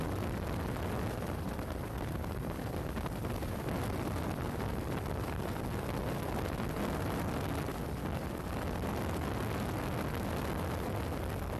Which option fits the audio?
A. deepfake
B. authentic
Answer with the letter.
B